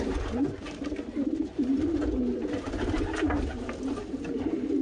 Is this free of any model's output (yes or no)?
yes